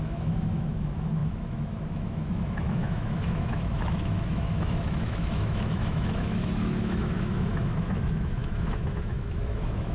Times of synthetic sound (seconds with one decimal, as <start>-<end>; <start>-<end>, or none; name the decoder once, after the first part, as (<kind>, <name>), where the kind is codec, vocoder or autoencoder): 0.0-9.9 (autoencoder, DAC-VAE)